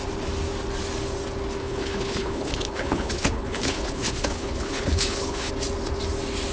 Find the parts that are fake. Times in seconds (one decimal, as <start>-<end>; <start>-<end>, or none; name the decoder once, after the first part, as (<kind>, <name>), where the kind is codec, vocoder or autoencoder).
1.6-5.5 (codec, HILCodec)